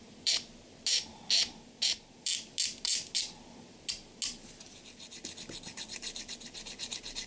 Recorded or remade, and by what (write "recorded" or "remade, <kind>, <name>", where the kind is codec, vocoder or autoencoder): recorded